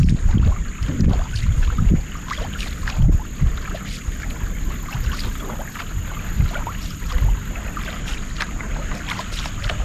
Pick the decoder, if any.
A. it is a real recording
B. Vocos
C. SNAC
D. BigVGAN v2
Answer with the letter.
A